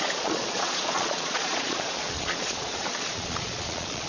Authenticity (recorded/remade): remade